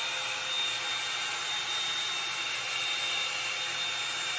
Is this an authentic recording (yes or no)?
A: yes